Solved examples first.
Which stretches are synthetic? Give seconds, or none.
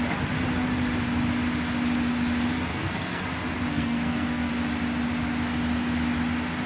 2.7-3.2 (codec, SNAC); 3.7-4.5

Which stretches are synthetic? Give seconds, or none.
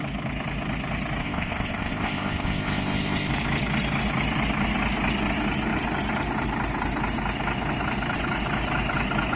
1.2-3.3 (codec, ZipCodec)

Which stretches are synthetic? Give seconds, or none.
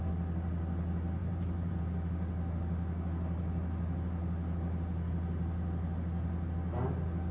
1.2-1.8 (vocoder, BigVGAN v2)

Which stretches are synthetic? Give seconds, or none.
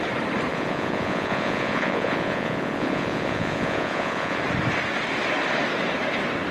0.5-4.4 (vocoder, Vocos)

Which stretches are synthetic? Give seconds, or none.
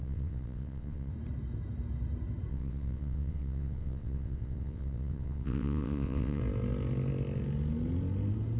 0.0-1.1 (vocoder, WaveNeXt); 2.5-6.4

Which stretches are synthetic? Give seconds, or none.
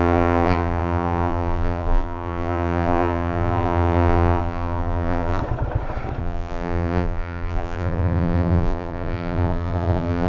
0.0-5.4 (vocoder, BigVGAN v2); 6.2-10.3